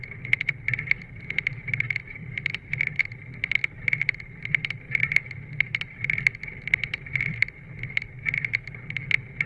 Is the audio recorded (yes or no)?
no